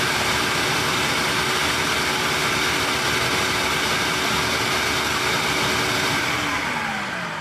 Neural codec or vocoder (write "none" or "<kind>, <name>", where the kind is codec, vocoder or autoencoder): none